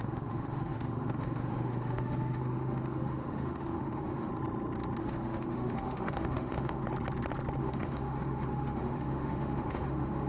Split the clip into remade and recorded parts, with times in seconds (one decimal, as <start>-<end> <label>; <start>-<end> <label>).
0.0-4.3 remade; 4.3-5.0 recorded; 5.0-6.8 remade; 6.8-7.6 recorded; 7.6-10.3 remade